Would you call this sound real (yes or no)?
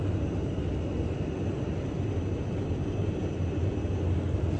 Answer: yes